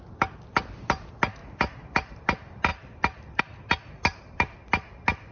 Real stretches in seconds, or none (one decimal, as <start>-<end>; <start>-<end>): 0.0-1.4; 2.1-2.7; 3.4-5.3